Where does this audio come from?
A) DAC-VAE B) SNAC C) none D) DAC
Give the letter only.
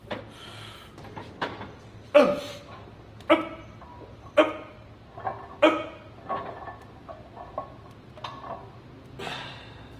C